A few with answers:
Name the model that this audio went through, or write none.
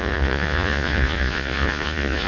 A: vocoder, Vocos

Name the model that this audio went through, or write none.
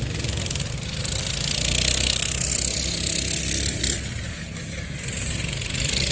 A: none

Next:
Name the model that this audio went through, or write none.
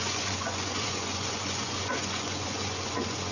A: vocoder, Vocos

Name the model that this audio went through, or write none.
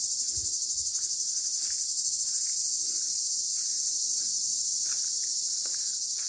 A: none